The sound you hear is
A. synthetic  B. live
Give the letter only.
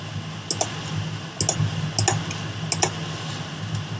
B